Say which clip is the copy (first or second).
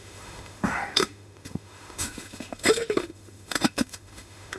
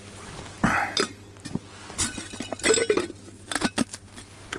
first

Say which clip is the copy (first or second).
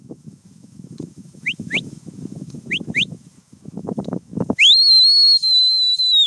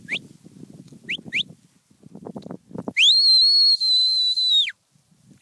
first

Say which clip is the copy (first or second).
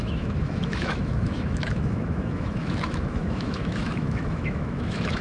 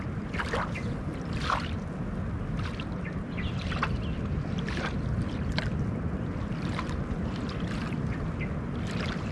first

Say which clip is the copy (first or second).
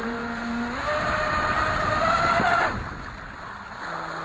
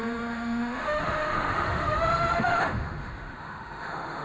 second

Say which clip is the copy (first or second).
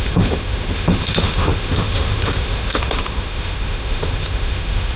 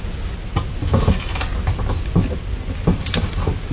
first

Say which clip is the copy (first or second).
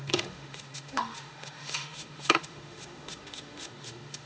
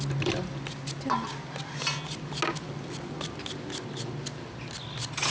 first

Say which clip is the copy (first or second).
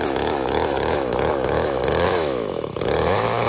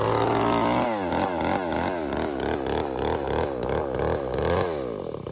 first